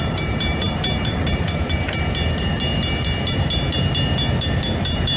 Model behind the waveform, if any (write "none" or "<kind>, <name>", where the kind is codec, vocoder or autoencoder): vocoder, BigVGAN v2